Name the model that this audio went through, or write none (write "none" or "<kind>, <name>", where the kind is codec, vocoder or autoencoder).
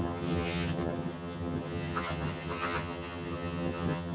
vocoder, HiFi-GAN